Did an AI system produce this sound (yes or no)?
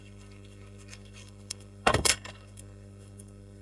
yes